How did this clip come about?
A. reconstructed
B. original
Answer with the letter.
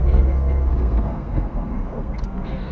A